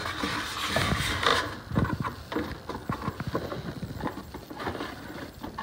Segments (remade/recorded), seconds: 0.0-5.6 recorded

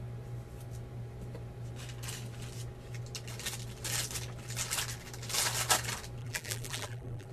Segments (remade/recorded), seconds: 0.0-6.2 recorded; 6.2-7.3 remade

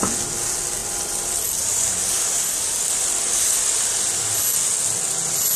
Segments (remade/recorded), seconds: 0.0-0.8 recorded; 0.8-4.2 remade; 4.2-5.6 recorded